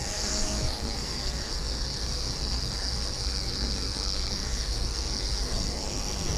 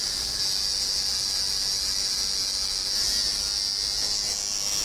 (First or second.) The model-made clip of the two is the first